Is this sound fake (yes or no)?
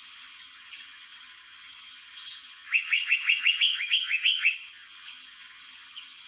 yes